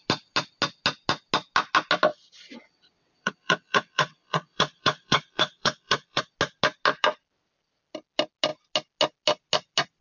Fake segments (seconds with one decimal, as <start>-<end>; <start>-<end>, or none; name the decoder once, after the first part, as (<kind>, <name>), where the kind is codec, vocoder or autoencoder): 2.1-6.2 (vocoder, WaveNeXt)